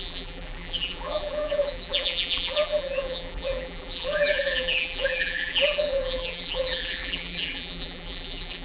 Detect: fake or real fake